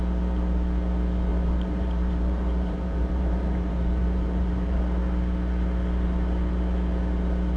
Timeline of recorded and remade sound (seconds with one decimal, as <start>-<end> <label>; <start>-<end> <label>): 0.0-1.3 recorded; 1.3-4.8 remade; 4.8-7.6 recorded